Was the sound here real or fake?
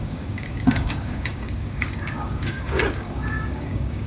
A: fake